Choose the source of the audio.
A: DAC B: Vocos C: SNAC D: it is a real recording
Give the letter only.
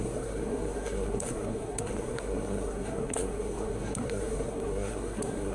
C